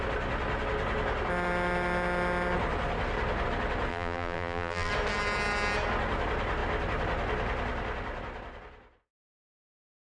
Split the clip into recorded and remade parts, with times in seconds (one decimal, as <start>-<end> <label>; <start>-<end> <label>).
0.0-3.9 recorded; 3.9-4.9 remade; 4.9-10.0 recorded